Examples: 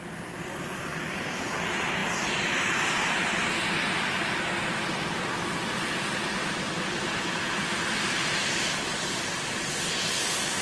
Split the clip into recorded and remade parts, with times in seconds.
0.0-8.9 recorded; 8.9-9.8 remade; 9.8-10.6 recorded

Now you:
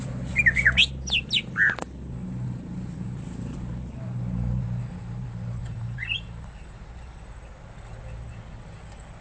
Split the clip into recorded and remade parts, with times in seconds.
0.0-5.6 recorded; 5.6-6.8 remade; 6.8-9.2 recorded

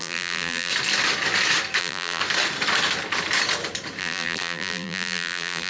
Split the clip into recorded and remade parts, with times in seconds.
0.0-0.7 remade; 0.7-1.8 recorded; 1.8-2.2 remade; 2.2-4.0 recorded; 4.0-5.7 remade

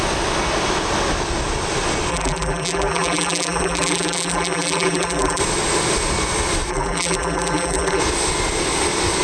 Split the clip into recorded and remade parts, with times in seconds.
0.0-2.1 recorded; 2.1-5.4 remade; 5.4-6.7 recorded; 6.7-8.0 remade; 8.0-9.2 recorded

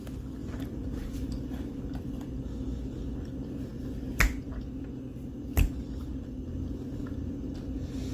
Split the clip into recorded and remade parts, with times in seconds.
0.0-0.4 recorded; 0.4-1.8 remade; 1.8-8.1 recorded

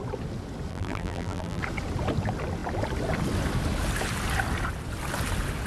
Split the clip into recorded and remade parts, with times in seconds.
0.0-0.7 recorded; 0.7-1.6 remade; 1.6-5.7 recorded

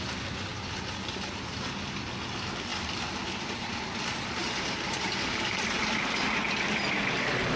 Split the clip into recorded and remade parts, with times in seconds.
0.0-0.5 recorded; 0.5-2.1 remade; 2.1-2.7 recorded; 2.7-3.8 remade; 3.8-4.4 recorded; 4.4-6.3 remade; 6.3-7.6 recorded